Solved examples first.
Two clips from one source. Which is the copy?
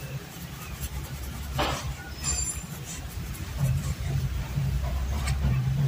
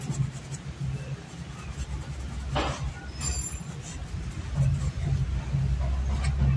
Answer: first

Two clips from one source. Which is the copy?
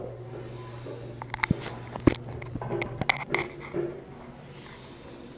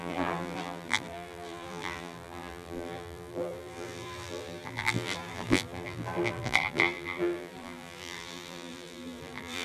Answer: second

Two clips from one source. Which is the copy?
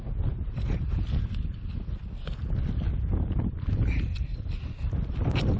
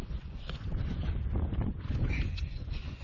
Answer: second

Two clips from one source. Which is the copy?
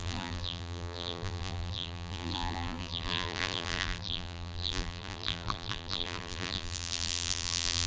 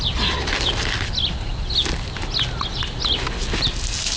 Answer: first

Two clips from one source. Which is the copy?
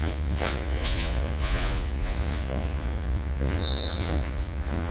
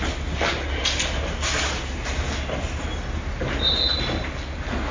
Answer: first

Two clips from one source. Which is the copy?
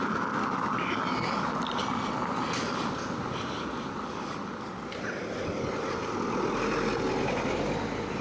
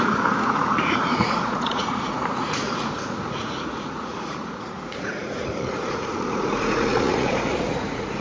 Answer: second